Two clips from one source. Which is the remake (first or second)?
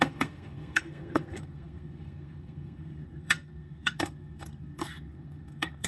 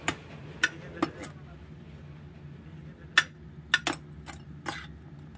first